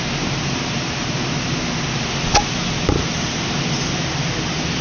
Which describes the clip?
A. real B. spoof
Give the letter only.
A